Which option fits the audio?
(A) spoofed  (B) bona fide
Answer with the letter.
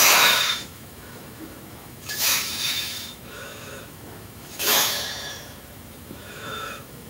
A